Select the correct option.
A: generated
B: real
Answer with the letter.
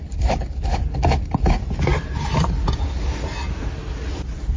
B